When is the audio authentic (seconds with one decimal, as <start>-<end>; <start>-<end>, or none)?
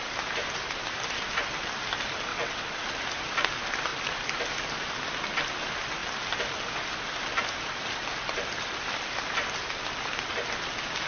0.0-2.3; 2.8-11.1